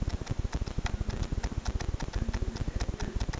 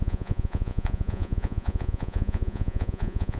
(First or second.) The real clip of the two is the first